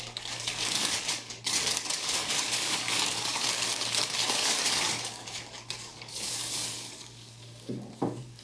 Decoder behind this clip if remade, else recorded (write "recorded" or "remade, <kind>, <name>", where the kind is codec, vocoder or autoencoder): remade, codec, DAC